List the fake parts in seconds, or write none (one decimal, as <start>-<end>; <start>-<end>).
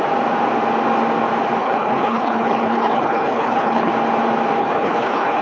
1.6-3.9; 4.6-5.4